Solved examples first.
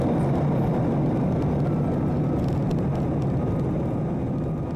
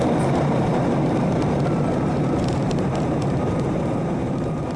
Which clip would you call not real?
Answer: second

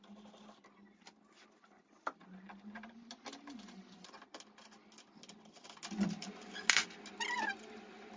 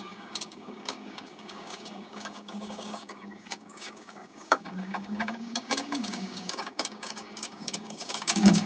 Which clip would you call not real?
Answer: second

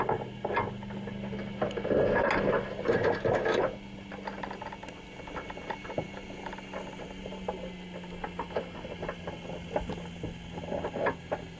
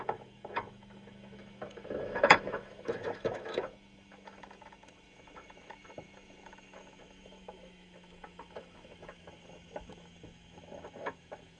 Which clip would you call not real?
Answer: second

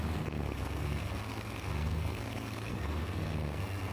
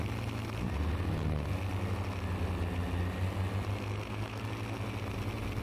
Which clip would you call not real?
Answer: first